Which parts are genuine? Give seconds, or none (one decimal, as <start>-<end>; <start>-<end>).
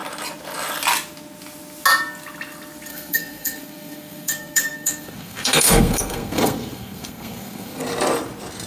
0.0-2.9; 7.8-8.7